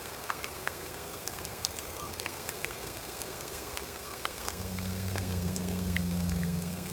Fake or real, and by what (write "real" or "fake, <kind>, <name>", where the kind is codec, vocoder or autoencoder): fake, codec, SNAC